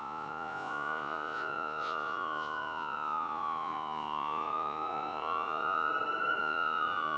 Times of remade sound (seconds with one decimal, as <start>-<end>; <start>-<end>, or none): 0.0-5.9; 6.4-7.2